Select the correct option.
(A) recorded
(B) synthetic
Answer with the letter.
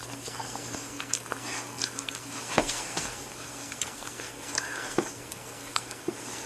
B